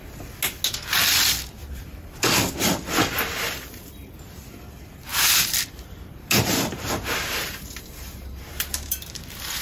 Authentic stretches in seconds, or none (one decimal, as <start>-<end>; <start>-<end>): 0.0-1.6; 2.4-5.1